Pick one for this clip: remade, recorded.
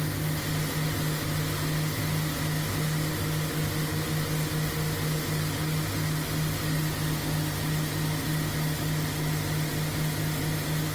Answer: recorded